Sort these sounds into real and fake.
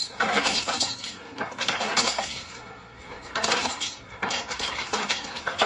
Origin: fake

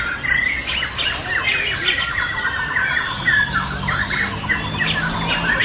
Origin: real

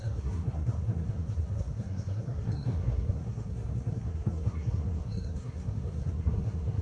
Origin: fake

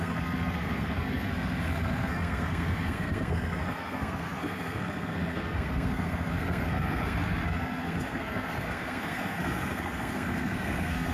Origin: fake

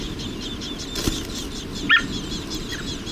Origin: real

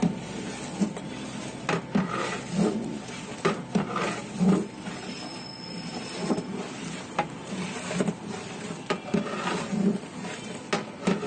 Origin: real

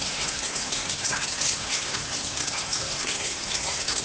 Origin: fake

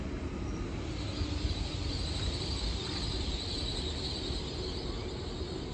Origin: real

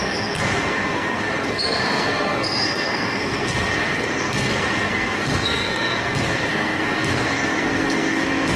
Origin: fake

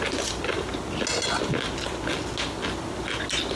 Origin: real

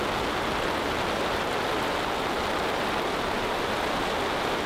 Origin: real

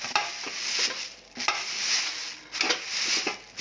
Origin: real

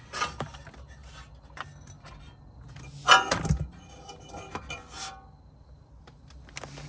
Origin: real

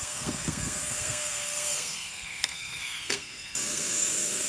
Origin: fake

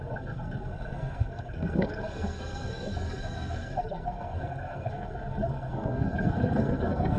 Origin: fake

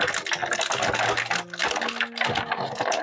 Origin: real